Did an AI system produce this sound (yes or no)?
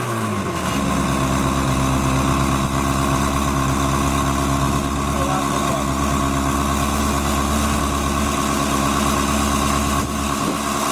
no